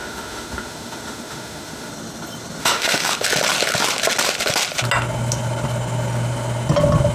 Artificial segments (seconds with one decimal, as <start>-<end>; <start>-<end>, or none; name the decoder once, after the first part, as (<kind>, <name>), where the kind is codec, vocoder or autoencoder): 0.0-1.9 (autoencoder, DAC-VAE); 2.6-3.1